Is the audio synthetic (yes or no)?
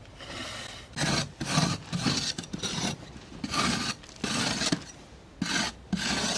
no